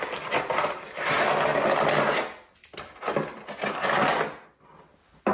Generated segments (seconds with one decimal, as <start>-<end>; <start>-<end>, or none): none